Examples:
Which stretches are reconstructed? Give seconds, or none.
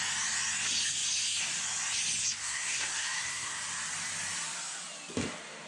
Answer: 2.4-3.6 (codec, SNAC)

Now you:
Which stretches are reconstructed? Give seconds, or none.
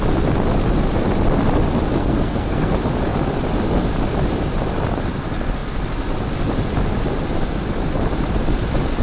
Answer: 2.0-2.7 (codec, SNAC)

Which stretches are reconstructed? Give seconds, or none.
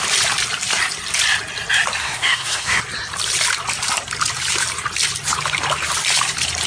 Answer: 2.0-2.8 (codec, SNAC)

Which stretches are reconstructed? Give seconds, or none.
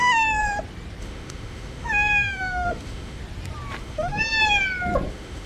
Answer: 0.0-0.4 (autoencoder, DAC-VAE); 1.0-3.2; 3.8-4.4; 5.1-5.5